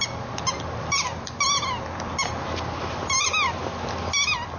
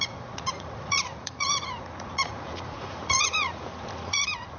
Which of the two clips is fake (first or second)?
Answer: second